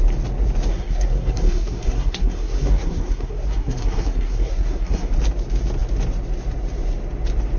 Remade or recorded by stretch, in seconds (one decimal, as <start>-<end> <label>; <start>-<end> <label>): 0.0-0.7 recorded; 0.7-5.1 remade; 5.1-7.6 recorded